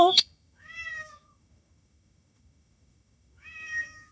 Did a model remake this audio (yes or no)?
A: yes